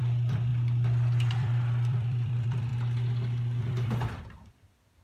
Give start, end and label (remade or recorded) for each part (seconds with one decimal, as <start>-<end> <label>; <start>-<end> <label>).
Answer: 0.0-0.5 remade; 0.5-1.3 recorded; 1.3-2.7 remade; 2.7-3.6 recorded; 3.6-5.0 remade